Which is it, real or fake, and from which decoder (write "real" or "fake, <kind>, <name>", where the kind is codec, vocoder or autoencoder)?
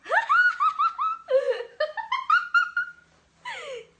real